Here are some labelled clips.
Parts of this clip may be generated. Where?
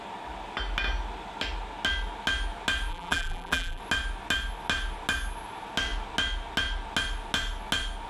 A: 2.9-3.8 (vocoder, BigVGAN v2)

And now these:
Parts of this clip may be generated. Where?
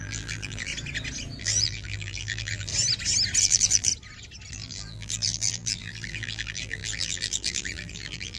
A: 0.0-0.7 (vocoder, BigVGAN v2); 1.4-2.7; 3.4-3.9; 4.5-8.4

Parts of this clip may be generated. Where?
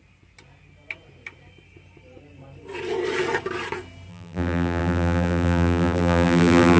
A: 4.1-6.8 (vocoder, BigVGAN v2)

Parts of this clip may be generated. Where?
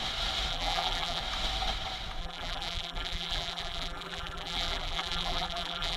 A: 0.5-1.2 (vocoder, BigVGAN v2); 2.2-6.0